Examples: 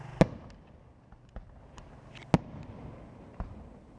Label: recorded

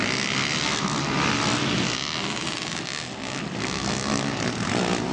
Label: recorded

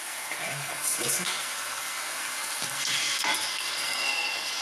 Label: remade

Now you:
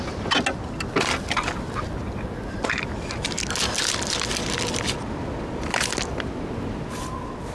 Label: recorded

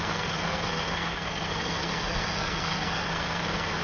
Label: remade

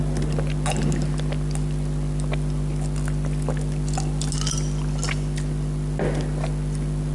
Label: recorded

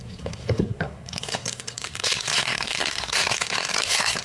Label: remade